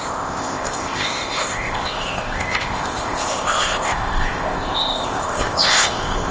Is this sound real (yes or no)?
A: no